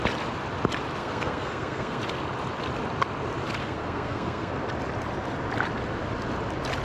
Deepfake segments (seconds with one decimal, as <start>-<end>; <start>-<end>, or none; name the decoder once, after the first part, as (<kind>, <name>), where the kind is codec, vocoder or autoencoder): 1.0-2.0 (codec, SNAC); 3.6-4.5